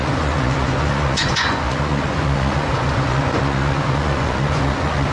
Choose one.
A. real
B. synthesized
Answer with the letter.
B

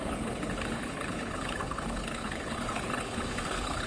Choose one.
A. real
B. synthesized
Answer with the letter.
B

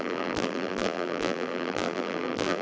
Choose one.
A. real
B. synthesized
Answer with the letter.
B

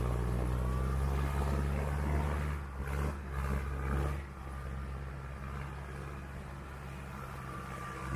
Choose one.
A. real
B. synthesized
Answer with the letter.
A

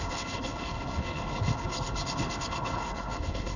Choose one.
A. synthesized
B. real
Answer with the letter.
A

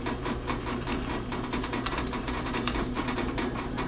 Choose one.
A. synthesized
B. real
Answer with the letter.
A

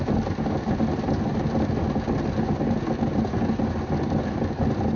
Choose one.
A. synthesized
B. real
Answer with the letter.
B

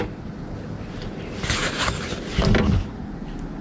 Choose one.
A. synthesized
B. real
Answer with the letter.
B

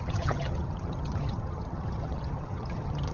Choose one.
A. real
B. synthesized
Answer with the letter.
B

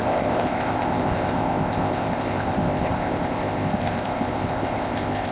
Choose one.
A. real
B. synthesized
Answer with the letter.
B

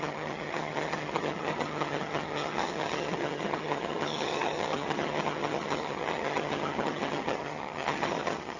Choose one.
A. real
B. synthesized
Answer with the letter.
B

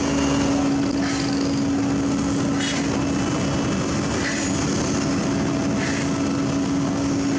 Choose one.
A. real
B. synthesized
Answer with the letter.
A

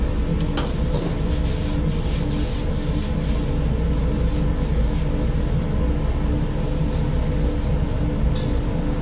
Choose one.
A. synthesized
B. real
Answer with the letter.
B